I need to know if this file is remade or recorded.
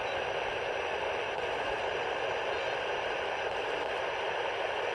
recorded